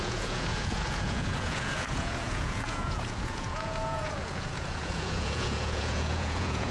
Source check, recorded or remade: remade